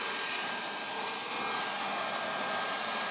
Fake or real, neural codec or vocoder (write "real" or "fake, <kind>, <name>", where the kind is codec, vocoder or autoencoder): real